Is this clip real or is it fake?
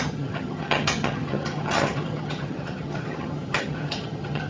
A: fake